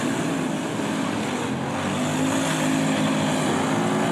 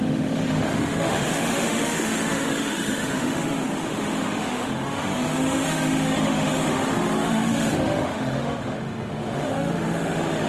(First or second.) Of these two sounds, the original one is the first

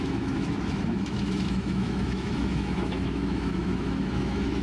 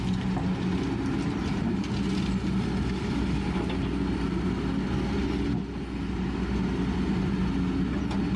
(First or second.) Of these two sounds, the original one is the second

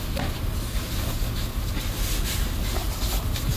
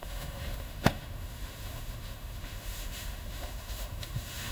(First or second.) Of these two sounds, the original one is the first